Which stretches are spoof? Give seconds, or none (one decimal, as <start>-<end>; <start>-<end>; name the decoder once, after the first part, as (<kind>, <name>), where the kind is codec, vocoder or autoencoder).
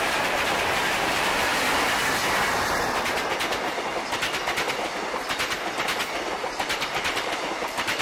0.0-1.5 (vocoder, BigVGAN v2); 6.3-8.0